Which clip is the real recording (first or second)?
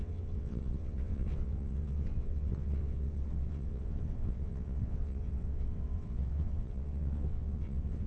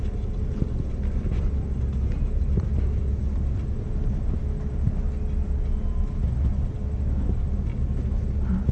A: second